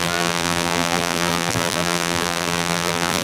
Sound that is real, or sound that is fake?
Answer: fake